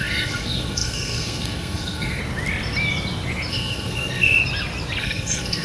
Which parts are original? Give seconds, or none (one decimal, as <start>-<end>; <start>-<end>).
2.2-3.5; 4.4-5.0